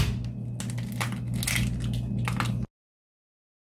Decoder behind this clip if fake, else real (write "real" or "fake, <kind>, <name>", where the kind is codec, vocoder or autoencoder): real